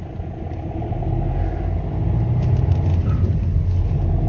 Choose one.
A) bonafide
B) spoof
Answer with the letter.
A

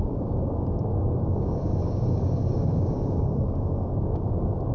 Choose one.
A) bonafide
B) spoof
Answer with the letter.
B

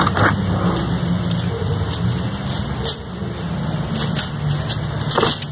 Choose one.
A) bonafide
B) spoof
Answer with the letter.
A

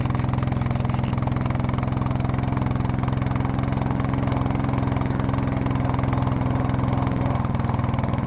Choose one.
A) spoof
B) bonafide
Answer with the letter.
B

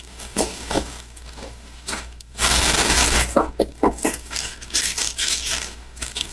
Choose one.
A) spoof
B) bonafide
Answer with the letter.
A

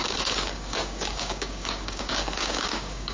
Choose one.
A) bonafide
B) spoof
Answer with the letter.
B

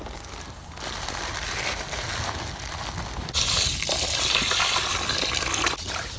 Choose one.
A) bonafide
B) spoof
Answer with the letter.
A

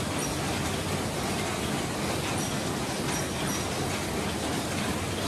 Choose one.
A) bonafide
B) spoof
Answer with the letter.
A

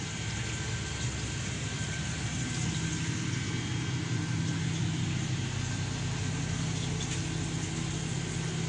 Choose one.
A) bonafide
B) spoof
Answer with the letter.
A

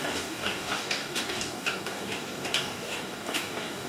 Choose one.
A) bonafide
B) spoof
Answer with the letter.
B